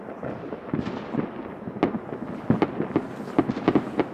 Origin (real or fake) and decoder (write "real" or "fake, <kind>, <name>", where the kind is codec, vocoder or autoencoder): real